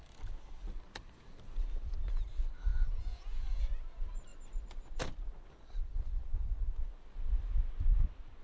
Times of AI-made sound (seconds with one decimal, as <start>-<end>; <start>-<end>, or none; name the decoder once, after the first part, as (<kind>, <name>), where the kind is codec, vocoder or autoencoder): 2.7-3.6 (vocoder, Vocos)